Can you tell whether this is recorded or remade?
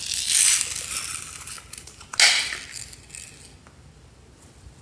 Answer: recorded